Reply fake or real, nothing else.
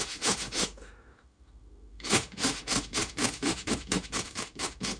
fake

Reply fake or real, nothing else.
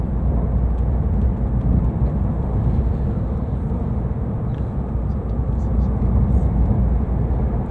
fake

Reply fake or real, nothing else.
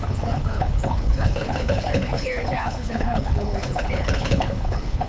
fake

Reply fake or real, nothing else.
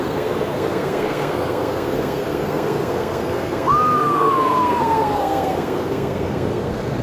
fake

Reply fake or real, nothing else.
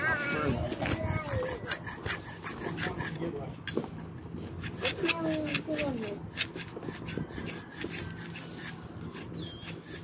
real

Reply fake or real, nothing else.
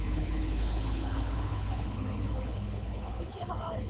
fake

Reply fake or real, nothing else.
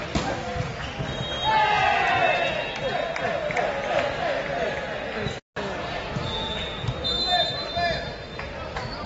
real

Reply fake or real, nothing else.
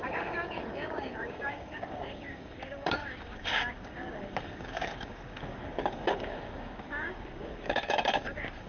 fake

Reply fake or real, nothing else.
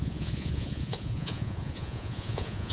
fake